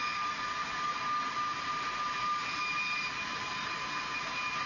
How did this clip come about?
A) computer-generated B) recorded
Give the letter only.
B